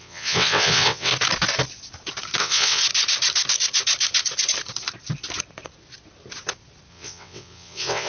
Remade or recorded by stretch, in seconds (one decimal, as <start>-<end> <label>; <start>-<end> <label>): 0.0-1.1 remade; 1.1-2.4 recorded; 2.4-2.8 remade; 2.8-6.9 recorded; 6.9-8.1 remade